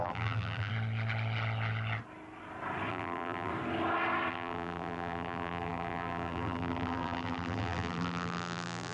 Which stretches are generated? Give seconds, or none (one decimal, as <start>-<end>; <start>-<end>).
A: 0.0-0.7; 2.9-3.5; 4.3-8.9